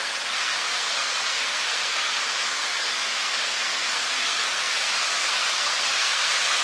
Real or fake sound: fake